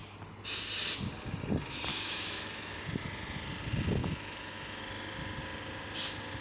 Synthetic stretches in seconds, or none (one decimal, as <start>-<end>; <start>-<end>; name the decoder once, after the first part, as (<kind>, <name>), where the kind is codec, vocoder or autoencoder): 1.9-2.8 (autoencoder, DAC-VAE); 4.0-4.8